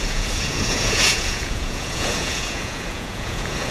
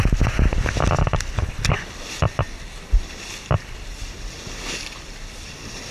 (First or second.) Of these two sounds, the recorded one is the second